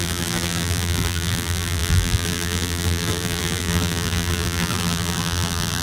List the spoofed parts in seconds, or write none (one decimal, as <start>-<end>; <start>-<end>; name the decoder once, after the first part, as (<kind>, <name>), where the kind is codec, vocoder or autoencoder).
0.0-5.8 (vocoder, BigVGAN v2)